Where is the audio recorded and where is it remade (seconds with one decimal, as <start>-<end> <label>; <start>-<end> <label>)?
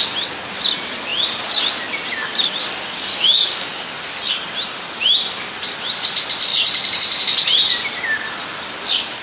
0.0-3.1 recorded; 3.1-3.9 remade; 3.9-9.2 recorded